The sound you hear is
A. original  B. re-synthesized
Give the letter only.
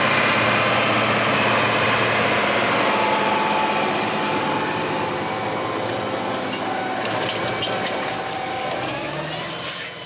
A